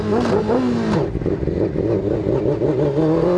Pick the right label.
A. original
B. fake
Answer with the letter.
A